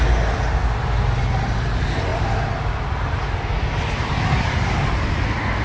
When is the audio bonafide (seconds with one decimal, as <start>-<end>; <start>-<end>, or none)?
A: 0.0-5.6